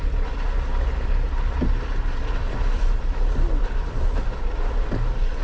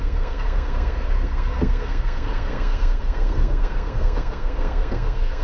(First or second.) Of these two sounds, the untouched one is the first